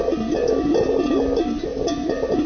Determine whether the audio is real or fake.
real